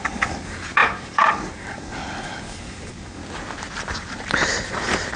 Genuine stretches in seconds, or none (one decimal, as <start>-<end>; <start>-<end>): 3.2-5.2